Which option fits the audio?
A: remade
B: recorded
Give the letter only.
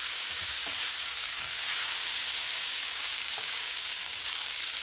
A